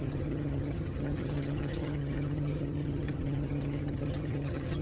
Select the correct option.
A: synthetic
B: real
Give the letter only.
A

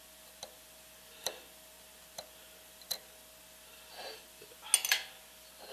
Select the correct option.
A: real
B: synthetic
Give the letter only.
A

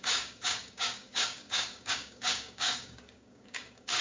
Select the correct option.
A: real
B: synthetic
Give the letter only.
B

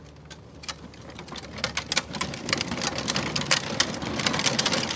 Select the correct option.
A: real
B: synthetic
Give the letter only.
A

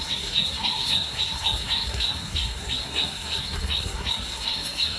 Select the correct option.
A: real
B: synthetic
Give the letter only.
B